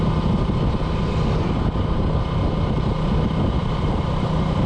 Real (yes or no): yes